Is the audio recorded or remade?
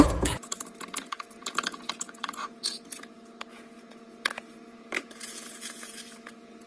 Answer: remade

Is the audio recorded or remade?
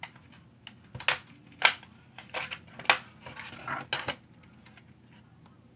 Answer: recorded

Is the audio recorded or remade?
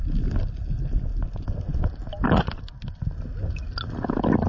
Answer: recorded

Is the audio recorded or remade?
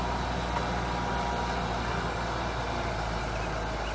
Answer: recorded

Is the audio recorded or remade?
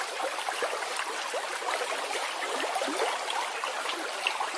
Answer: recorded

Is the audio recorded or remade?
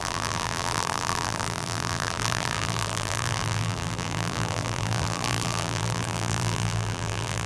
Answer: remade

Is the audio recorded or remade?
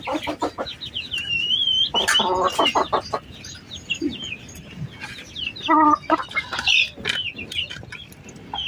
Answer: recorded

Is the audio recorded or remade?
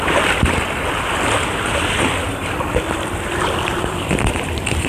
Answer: recorded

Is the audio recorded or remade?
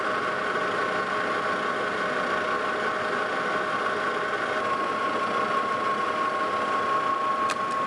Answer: recorded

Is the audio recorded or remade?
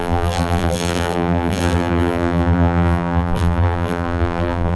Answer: remade